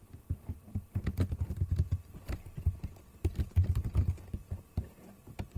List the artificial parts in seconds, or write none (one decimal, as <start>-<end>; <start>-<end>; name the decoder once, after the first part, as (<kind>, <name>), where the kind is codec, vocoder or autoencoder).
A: none